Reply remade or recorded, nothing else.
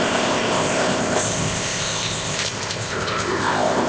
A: remade